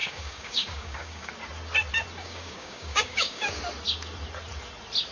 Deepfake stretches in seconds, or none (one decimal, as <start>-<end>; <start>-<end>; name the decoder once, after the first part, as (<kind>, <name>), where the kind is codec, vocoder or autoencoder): 0.0-1.3 (codec, DAC); 2.2-3.6